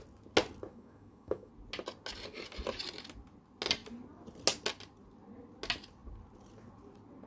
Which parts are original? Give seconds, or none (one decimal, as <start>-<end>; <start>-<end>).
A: 0.0-0.7; 1.5-7.3